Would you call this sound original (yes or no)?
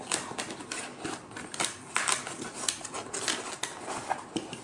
yes